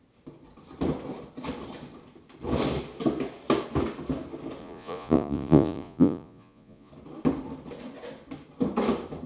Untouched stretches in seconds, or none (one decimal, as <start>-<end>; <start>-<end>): 0.0-4.6; 6.9-9.3